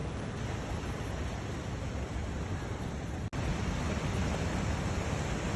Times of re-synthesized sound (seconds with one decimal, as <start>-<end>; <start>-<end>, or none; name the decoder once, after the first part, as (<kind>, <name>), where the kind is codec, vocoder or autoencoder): none